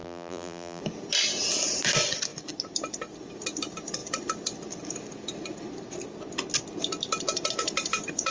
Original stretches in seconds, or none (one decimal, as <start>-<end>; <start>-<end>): 0.8-8.3